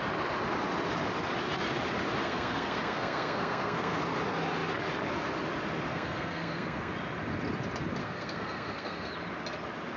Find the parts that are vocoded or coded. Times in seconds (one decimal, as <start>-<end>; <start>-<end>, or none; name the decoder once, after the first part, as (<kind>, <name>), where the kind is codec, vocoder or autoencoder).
2.2-4.0 (codec, SNAC); 5.9-6.9; 8.0-9.1